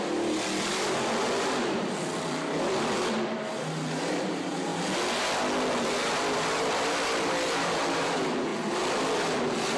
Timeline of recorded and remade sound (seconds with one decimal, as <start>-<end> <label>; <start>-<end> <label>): 0.0-4.7 remade; 4.7-5.8 recorded; 5.8-8.5 remade; 8.5-9.4 recorded; 9.4-9.8 remade